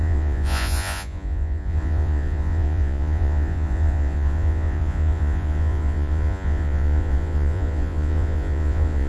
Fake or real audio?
fake